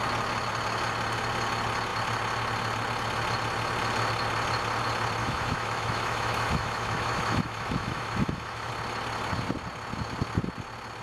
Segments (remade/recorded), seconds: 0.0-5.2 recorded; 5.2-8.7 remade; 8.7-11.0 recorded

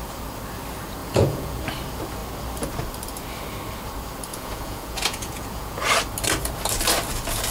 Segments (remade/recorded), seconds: 0.0-1.0 recorded; 1.0-1.6 remade; 1.6-4.3 recorded; 4.3-5.8 remade; 5.8-7.5 recorded

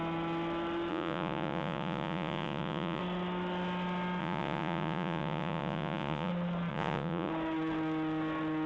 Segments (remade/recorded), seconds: 0.0-0.9 recorded; 0.9-3.0 remade; 3.0-4.2 recorded; 4.2-6.3 remade; 6.3-6.7 recorded; 6.7-7.3 remade; 7.3-8.7 recorded

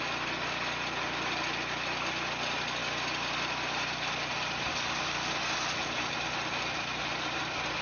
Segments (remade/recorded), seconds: 0.0-7.8 recorded

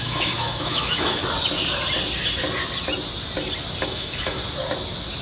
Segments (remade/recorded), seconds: 0.0-1.2 remade; 1.2-3.8 recorded; 3.8-4.4 remade; 4.4-5.2 recorded

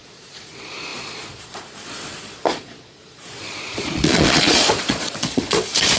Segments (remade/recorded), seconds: 0.0-6.0 remade